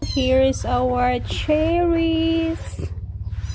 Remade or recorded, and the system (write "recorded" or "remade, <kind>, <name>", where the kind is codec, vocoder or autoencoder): recorded